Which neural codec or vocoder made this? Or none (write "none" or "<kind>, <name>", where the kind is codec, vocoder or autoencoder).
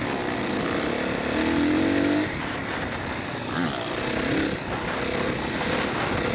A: none